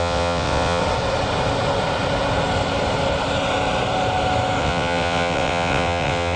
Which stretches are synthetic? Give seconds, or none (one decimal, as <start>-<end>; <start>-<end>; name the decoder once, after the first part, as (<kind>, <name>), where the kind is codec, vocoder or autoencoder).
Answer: 0.0-0.8 (vocoder, WaveNeXt); 4.6-6.4